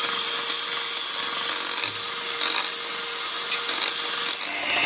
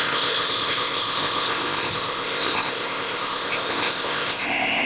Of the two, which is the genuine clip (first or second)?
first